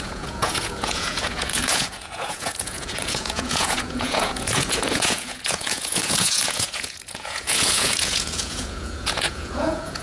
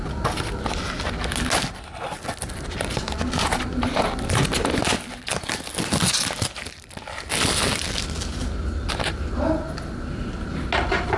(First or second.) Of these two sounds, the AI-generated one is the first